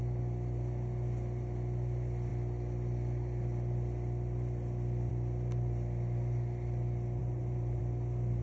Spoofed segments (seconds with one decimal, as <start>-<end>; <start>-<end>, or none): 7.2-7.8